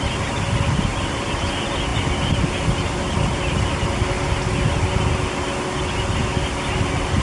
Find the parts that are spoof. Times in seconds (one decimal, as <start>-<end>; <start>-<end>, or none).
none